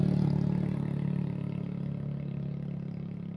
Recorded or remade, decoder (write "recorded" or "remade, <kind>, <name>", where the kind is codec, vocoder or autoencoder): recorded